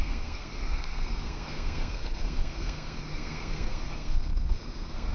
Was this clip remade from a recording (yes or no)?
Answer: yes